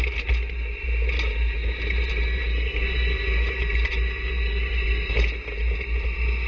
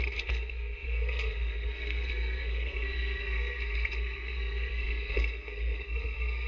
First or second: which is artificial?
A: second